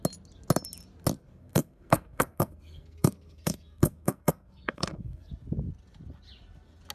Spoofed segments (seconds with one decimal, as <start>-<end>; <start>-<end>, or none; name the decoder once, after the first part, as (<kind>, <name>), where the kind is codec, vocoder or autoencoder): 1.2-5.3 (codec, SNAC)